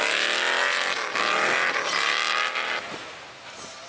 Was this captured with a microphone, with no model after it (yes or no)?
yes